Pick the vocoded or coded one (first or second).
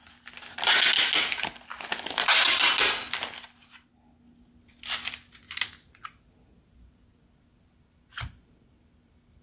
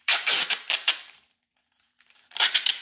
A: second